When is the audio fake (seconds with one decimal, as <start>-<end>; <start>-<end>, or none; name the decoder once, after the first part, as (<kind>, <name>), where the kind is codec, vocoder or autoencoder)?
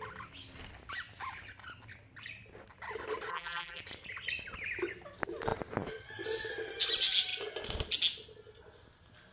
3.3-3.8 (vocoder, BigVGAN v2)